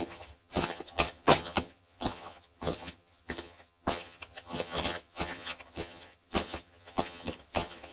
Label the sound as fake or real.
fake